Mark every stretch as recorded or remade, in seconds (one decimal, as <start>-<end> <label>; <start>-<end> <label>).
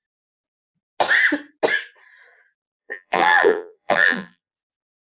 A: 0.0-2.8 recorded; 2.8-4.5 remade; 4.5-5.1 recorded